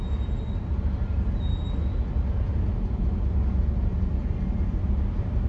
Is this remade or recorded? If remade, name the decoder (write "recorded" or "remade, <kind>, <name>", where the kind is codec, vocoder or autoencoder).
recorded